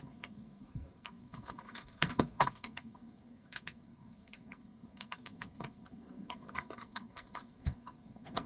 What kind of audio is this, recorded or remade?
remade